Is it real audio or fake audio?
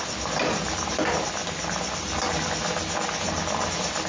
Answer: real